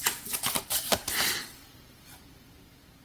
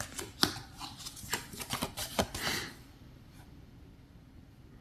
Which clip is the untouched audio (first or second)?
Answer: first